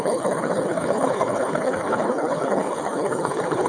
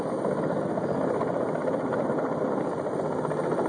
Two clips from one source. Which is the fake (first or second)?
first